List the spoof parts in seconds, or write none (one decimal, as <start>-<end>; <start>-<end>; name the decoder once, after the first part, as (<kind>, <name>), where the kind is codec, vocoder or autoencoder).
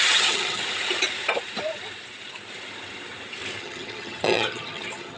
0.0-0.6 (vocoder, HiFi-GAN); 3.6-5.2